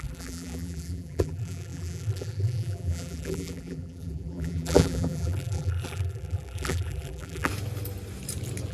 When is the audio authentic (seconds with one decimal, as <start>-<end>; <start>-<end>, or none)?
7.5-8.7